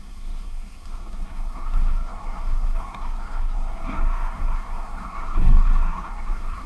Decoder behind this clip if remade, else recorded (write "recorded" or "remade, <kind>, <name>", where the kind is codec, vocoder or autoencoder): remade, codec, SNAC